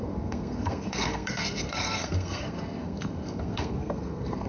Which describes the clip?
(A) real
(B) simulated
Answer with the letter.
B